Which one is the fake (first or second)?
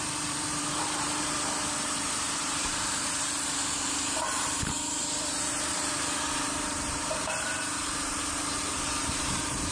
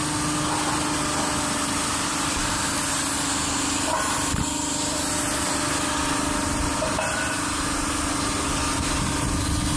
first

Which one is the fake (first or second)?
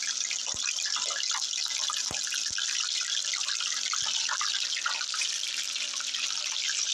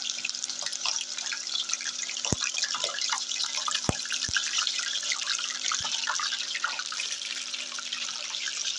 second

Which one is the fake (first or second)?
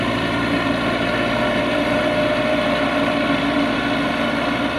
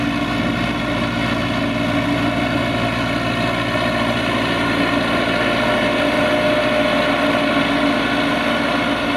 first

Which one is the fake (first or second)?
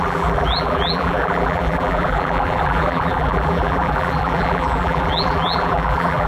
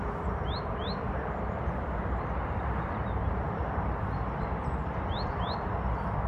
first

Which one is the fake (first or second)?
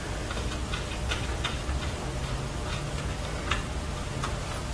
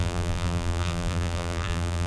second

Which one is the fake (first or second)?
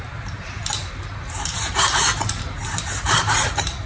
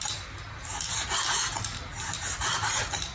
first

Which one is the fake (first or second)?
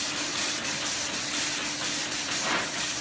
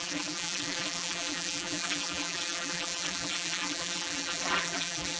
second